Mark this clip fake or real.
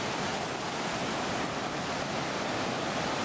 real